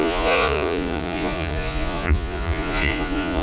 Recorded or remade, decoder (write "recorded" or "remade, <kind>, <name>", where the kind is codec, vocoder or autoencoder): remade, vocoder, Vocos